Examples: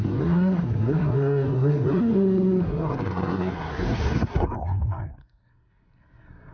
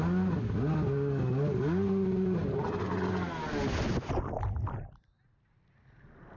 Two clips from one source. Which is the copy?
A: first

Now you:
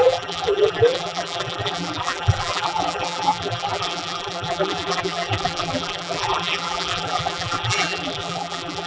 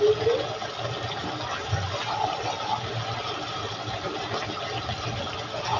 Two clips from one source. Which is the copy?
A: first